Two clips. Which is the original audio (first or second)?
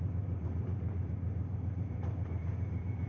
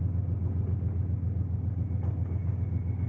second